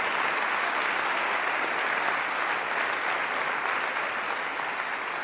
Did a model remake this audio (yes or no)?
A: no